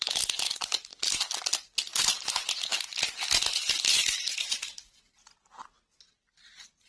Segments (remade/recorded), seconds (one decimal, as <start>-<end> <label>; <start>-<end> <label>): 0.0-6.9 recorded